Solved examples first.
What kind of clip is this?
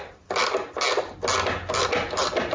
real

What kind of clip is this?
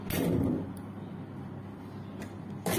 real